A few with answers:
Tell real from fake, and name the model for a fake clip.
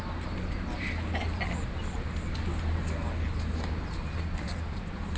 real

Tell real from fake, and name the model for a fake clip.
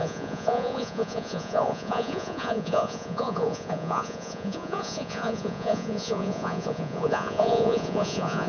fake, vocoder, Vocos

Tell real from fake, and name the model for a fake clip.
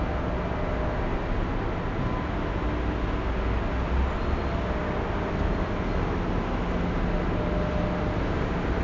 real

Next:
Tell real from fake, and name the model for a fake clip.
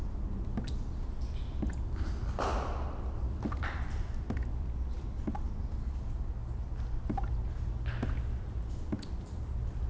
real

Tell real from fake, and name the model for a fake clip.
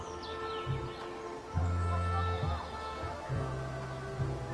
real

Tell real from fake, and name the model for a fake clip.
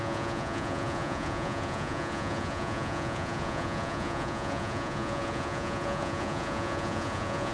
fake, vocoder, Vocos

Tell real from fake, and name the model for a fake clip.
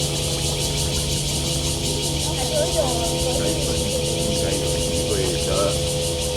real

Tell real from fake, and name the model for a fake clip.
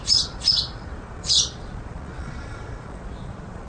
fake, vocoder, Vocos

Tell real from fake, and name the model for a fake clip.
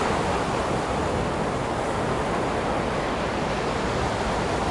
real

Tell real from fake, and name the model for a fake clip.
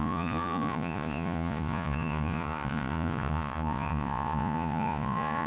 fake, vocoder, Vocos